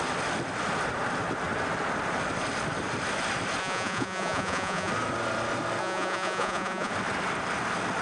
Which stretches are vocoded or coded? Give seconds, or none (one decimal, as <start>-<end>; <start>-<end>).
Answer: 3.6-4.9; 5.8-6.9